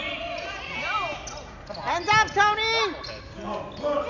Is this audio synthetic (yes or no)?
no